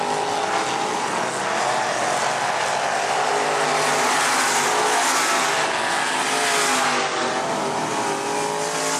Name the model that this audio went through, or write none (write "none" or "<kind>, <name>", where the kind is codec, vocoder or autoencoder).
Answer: none